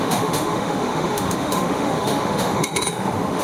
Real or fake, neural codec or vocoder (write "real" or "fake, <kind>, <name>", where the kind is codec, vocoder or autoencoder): fake, autoencoder, DAC-VAE